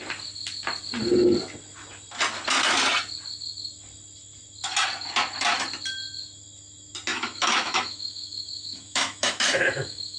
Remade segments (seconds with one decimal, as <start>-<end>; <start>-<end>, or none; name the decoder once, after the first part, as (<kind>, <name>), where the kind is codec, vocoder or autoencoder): 7.1-10.2 (autoencoder, DAC-VAE)